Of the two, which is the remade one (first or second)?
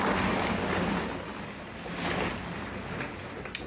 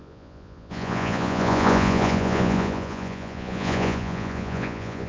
second